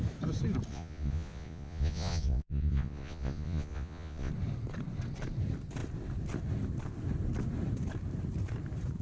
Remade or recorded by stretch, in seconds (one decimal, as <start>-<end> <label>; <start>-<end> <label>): 0.0-0.7 recorded; 0.7-4.3 remade; 4.3-9.0 recorded